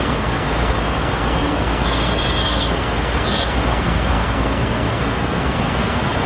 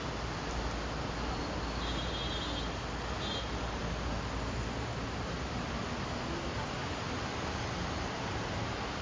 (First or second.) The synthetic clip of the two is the first